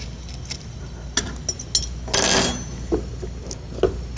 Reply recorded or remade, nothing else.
recorded